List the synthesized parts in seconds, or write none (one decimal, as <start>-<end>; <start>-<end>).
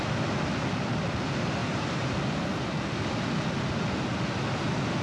1.6-2.1